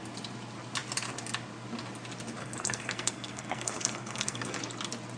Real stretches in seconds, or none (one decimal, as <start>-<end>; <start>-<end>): 0.0-2.4; 4.6-5.2